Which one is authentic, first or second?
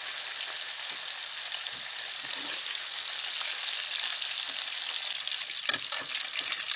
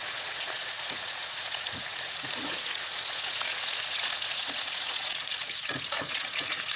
first